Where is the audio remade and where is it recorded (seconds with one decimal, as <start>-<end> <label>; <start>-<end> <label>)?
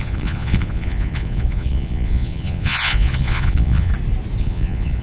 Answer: 0.0-3.9 remade; 3.9-4.4 recorded; 4.4-5.0 remade